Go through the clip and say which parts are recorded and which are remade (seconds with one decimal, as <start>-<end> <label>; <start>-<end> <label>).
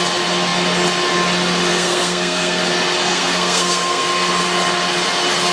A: 0.0-1.7 recorded; 1.7-2.6 remade; 2.6-3.1 recorded; 3.1-4.3 remade; 4.3-5.5 recorded